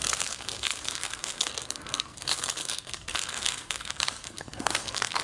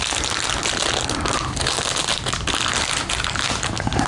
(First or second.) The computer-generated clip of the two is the first